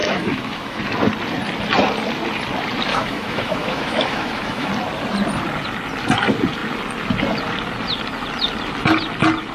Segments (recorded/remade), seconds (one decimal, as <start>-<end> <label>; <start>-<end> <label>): 0.0-0.8 remade; 0.8-2.9 recorded; 2.9-4.7 remade; 4.7-9.5 recorded